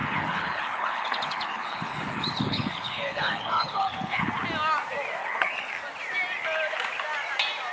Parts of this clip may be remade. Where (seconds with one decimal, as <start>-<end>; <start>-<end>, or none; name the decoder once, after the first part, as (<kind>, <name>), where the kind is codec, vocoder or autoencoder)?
0.0-4.3 (codec, HILCodec); 5.2-5.7

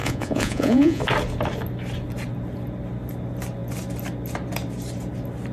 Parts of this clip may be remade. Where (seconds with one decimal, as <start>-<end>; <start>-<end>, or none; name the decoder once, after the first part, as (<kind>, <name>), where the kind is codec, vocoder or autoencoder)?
0.0-1.0 (vocoder, Vocos)

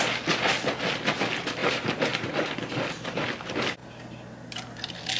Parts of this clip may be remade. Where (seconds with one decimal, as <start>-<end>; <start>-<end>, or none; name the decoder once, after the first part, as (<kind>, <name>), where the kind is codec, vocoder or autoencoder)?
1.6-2.3 (vocoder, BigVGAN v2)

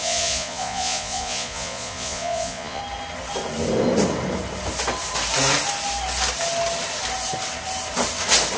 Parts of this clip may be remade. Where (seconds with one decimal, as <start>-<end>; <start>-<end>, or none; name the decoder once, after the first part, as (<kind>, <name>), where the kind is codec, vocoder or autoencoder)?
0.0-2.8 (vocoder, Vocos)